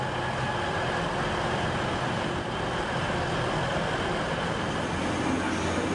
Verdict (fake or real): real